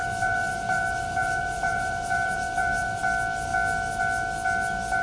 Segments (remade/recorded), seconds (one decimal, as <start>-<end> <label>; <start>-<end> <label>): 0.0-3.0 remade; 3.0-5.0 recorded